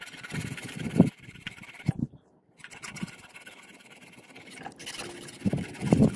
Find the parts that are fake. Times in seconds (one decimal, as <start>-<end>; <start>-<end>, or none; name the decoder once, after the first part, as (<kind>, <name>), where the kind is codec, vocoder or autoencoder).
0.0-4.8 (vocoder, BigVGAN v2); 5.5-6.2